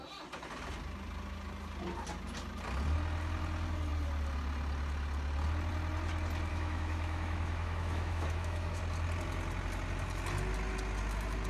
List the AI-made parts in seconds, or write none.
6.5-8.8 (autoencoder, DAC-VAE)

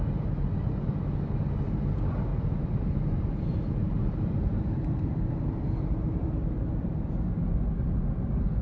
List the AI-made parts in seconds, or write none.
2.3-6.6 (vocoder, BigVGAN v2)

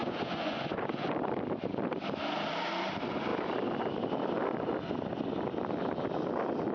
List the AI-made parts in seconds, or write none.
0.0-1.1 (vocoder, Vocos)

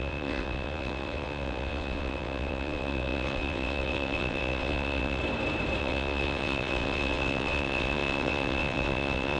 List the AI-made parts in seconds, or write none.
0.0-5.2 (vocoder, WaveNeXt); 5.8-9.4

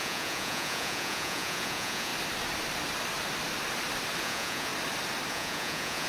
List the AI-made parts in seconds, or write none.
0.0-2.1 (vocoder, Vocos); 4.2-4.7; 5.3-6.1

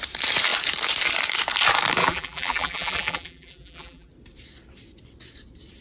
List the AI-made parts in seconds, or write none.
2.0-4.1 (vocoder, BigVGAN v2)